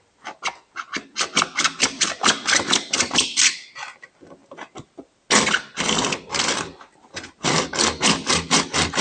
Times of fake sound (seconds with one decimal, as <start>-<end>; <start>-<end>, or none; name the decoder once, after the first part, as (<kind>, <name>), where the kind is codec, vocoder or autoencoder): none